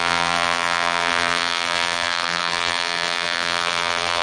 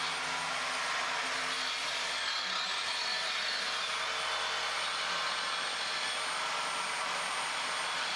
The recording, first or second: second